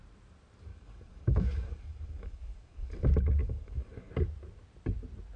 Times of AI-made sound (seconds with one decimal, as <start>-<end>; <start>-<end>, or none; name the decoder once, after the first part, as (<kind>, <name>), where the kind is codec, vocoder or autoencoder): 0.7-2.9 (codec, DAC); 3.4-4.1